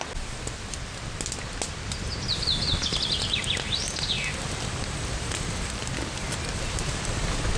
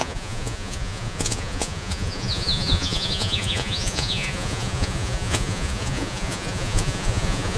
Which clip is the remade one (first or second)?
second